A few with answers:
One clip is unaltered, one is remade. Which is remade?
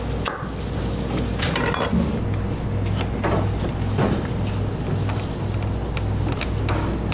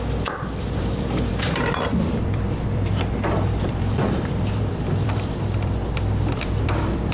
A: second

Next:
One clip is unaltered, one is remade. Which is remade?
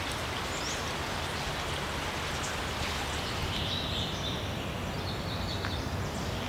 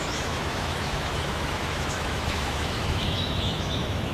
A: second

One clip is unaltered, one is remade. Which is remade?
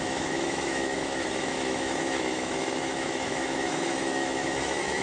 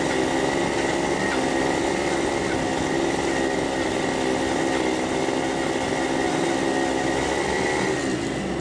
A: first